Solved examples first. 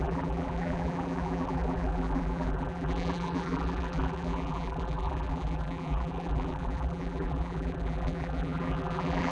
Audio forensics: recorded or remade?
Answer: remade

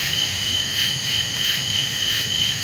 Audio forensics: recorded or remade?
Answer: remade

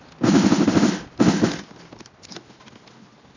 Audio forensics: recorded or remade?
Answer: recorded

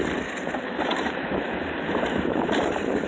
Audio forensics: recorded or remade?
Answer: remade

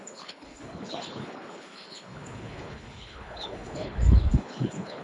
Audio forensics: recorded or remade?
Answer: remade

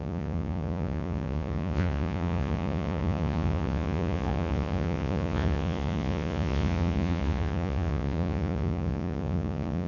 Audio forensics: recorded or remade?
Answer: remade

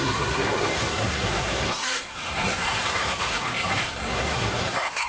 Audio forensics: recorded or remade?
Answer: remade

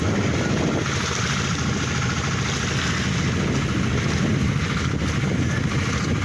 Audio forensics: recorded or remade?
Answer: recorded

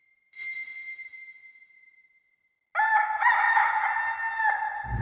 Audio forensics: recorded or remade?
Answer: recorded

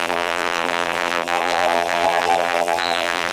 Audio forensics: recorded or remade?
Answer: remade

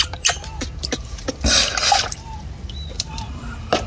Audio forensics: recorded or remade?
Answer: recorded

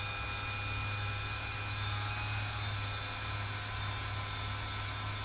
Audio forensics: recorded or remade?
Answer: recorded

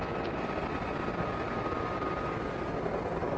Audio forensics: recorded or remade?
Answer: recorded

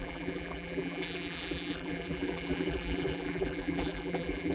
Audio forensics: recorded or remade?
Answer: remade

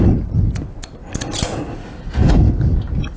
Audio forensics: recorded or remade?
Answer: recorded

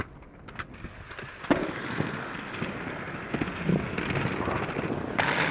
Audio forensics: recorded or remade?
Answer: recorded